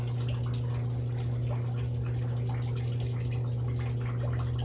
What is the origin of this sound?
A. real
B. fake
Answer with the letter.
A